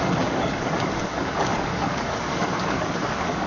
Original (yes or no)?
no